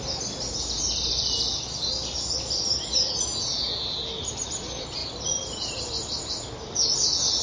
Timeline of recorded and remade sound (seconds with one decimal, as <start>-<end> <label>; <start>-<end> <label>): 0.0-7.4 recorded